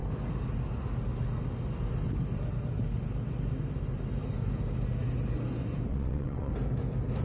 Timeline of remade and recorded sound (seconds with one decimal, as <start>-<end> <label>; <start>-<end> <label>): 0.0-5.9 recorded; 5.9-6.5 remade; 6.5-7.2 recorded